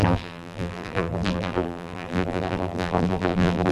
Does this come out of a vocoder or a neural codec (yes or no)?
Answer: yes